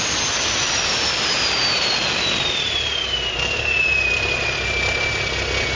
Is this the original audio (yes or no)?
yes